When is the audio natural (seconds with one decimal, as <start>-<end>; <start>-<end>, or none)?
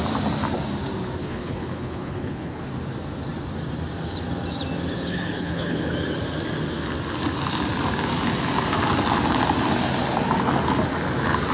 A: 0.0-1.2; 2.7-5.1; 5.9-11.5